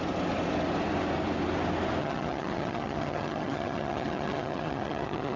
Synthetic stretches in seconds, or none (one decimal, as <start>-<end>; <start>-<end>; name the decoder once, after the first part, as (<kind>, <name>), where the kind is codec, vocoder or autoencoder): 2.0-5.4 (vocoder, HiFi-GAN)